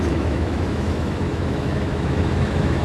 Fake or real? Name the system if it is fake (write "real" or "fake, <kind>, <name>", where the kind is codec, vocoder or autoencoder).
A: fake, autoencoder, DAC-VAE